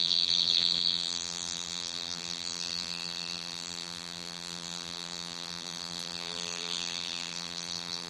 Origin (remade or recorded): remade